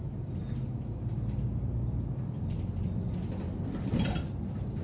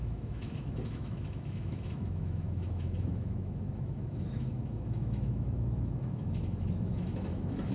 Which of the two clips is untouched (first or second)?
first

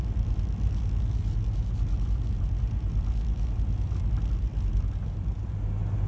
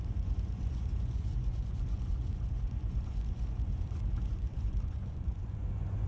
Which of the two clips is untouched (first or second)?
first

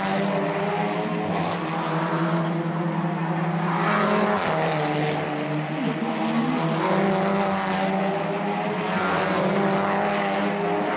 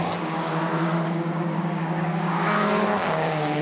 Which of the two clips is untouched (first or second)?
first